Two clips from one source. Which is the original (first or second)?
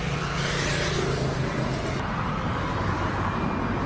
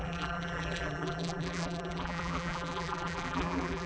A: first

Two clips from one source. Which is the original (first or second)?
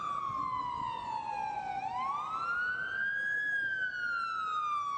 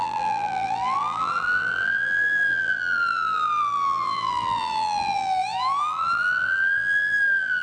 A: first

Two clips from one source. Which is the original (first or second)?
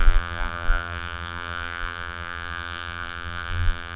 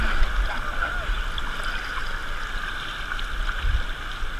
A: second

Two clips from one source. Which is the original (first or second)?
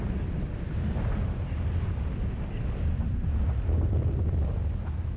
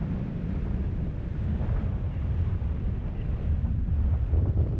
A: first